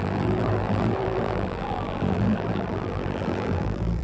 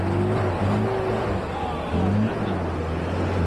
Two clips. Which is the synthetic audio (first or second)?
first